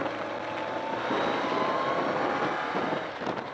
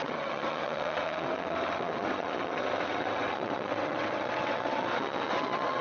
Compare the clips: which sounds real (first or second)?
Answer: first